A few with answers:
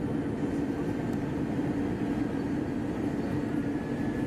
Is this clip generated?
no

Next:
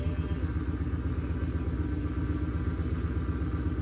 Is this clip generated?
no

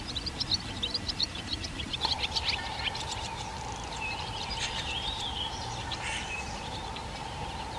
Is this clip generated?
yes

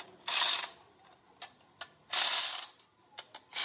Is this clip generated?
no